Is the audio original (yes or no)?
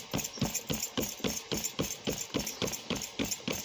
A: no